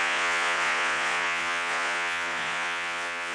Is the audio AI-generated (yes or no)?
yes